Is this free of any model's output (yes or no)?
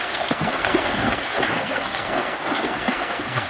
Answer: no